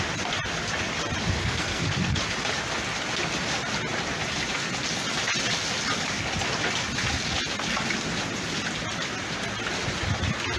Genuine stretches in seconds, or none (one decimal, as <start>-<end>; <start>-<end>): 0.0-1.4; 2.2-10.6